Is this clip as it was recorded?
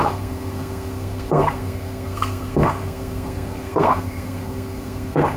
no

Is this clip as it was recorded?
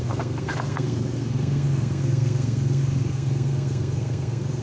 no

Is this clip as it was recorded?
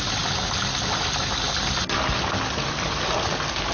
yes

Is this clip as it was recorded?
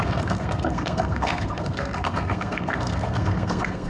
no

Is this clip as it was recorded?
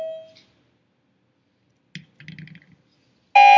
yes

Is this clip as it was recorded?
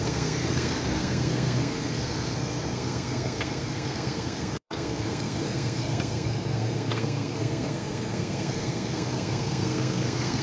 no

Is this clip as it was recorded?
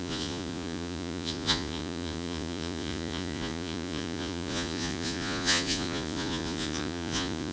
no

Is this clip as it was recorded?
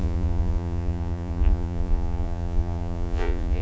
no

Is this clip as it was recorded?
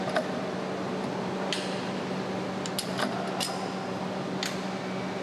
yes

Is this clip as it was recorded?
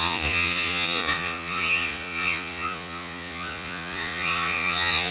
no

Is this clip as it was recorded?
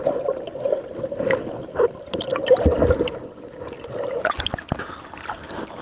yes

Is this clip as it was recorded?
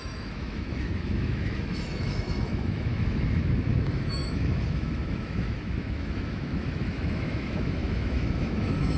no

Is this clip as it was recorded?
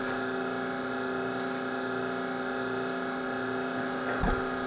yes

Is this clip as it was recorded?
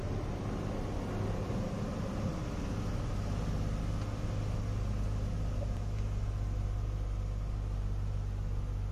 yes